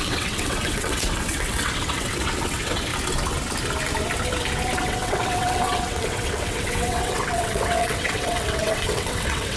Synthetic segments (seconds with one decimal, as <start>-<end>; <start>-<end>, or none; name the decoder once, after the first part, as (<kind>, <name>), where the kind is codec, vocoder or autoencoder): 0.0-2.9 (vocoder, WaveNeXt); 4.8-9.6